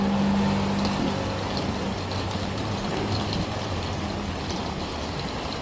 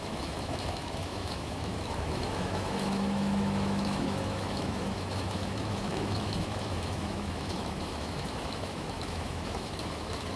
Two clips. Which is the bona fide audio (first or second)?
first